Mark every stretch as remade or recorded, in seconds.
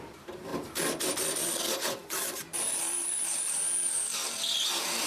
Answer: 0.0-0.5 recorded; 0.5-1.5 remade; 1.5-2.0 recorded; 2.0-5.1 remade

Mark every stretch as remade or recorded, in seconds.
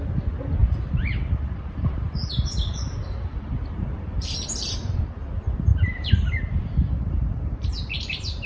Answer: 0.0-0.6 recorded; 0.6-5.0 remade; 5.0-5.7 recorded; 5.7-8.5 remade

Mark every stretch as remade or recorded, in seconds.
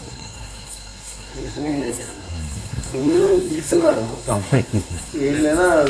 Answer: 0.0-5.1 remade; 5.1-5.9 recorded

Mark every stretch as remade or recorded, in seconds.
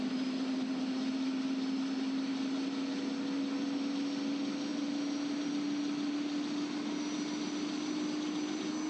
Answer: 0.0-8.9 recorded